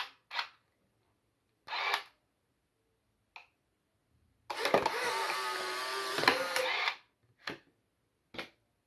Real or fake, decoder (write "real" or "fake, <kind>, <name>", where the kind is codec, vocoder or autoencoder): real